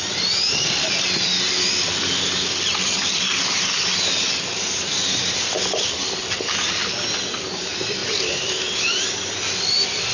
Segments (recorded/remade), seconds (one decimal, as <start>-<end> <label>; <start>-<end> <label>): 0.0-10.1 recorded